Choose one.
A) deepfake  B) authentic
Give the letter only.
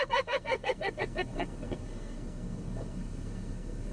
A